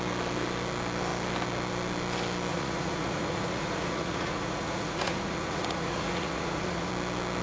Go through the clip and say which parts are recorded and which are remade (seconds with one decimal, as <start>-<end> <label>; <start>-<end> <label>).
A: 0.0-2.5 recorded; 2.5-6.9 remade; 6.9-7.4 recorded